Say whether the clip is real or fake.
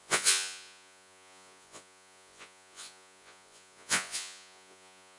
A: fake